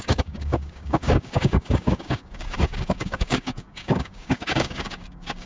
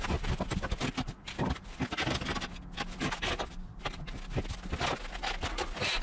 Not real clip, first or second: first